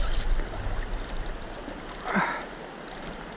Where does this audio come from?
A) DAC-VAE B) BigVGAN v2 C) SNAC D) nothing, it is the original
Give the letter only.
D